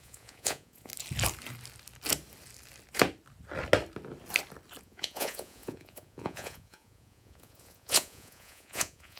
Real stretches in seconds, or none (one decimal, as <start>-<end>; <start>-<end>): 0.9-4.8